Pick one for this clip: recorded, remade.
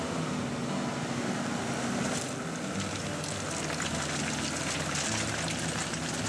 recorded